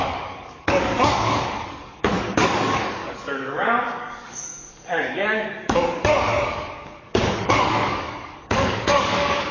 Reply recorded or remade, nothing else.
remade